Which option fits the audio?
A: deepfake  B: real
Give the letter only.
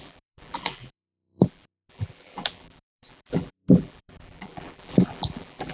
A